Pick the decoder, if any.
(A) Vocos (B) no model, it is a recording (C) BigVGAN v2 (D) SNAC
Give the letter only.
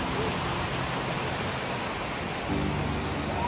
B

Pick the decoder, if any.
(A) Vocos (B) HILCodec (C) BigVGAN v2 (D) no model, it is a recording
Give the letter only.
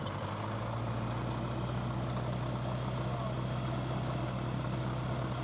D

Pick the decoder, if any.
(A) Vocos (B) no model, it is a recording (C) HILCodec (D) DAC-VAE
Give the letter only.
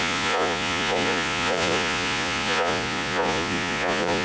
A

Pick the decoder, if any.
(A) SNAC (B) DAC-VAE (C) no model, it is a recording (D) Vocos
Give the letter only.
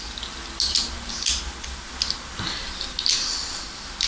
C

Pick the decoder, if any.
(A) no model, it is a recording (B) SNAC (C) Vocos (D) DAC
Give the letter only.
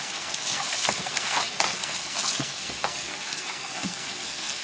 B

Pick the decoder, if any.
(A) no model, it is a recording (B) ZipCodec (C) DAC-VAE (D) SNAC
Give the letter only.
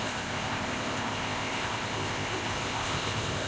B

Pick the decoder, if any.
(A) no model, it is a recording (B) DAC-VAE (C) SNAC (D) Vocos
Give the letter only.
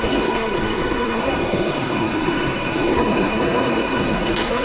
C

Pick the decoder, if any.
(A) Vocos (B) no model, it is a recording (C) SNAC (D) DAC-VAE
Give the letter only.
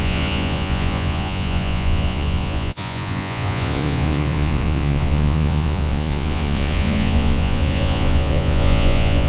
A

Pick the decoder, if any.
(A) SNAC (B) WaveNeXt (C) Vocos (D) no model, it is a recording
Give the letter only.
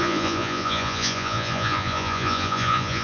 C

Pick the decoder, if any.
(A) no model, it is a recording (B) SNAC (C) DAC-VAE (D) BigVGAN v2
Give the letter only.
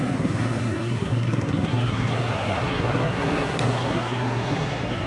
B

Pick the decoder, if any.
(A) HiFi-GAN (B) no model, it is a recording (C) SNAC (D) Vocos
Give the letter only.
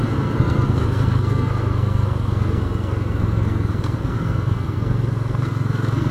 C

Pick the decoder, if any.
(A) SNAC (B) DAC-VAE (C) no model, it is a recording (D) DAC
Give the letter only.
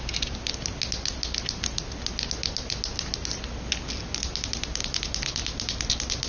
C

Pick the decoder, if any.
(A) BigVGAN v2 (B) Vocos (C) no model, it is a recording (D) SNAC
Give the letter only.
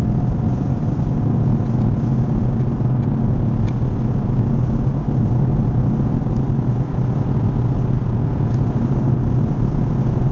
C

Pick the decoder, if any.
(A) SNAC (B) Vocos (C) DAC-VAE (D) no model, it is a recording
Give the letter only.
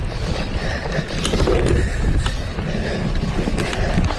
D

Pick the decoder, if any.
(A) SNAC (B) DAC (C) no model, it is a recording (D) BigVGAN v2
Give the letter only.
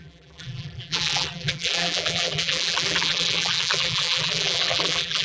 D